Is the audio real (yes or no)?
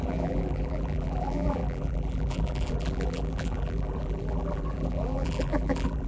no